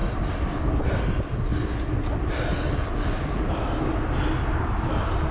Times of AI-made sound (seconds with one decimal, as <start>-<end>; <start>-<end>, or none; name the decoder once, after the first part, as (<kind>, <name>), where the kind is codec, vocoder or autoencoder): none